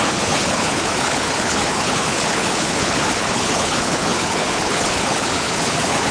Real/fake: fake